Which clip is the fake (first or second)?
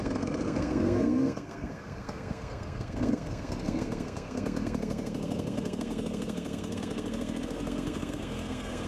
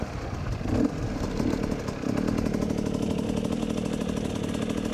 first